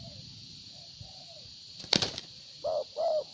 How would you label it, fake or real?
fake